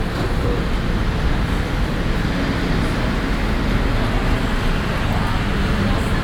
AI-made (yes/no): no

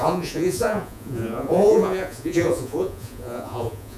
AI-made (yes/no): yes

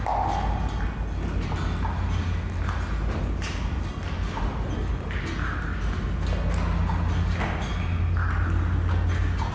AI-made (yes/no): no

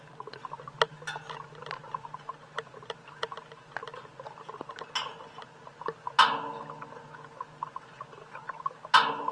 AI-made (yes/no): no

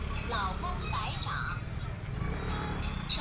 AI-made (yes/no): no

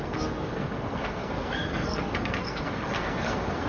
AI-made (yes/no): yes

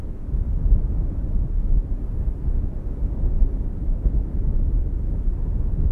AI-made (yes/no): no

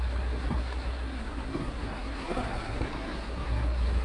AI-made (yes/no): yes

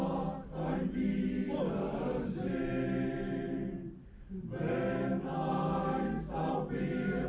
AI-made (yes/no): no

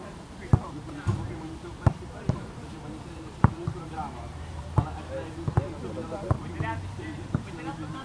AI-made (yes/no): yes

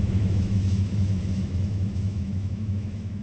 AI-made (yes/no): yes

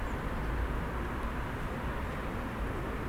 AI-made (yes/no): no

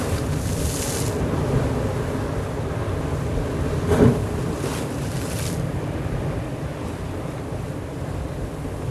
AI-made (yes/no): no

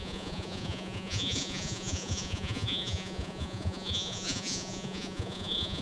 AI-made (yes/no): yes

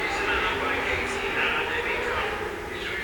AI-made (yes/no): no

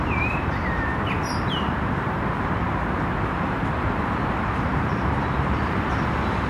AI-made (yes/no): yes